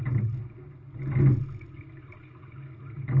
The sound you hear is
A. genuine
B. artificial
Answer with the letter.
A